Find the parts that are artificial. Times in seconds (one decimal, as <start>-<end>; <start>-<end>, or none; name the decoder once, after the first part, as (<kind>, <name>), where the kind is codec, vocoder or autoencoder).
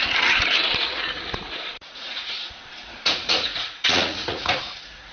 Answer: 0.0-5.1 (vocoder, Vocos)